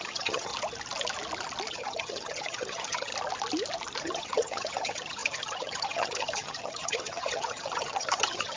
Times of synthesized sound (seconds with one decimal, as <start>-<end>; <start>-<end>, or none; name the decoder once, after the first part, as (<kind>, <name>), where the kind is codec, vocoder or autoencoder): 0.0-0.5 (vocoder, HiFi-GAN); 1.7-3.1; 4.0-8.6